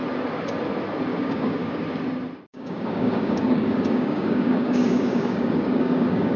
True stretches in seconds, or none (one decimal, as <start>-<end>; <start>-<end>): 0.0-1.1; 1.8-2.5